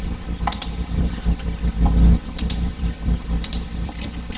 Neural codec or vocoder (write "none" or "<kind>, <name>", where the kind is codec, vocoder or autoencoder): vocoder, BigVGAN v2